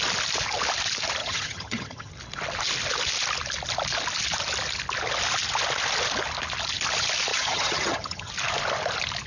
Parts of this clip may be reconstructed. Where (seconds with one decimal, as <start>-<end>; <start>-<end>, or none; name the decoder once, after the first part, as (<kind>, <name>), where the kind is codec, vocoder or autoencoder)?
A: 1.2-2.1 (vocoder, HiFi-GAN); 7.3-8.3